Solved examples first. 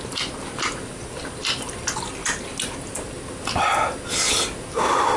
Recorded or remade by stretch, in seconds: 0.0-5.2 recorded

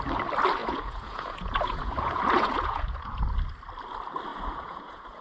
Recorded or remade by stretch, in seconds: 0.0-0.6 recorded; 0.6-3.2 remade; 3.2-4.3 recorded; 4.3-5.2 remade